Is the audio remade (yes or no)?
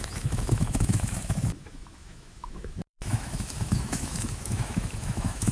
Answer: yes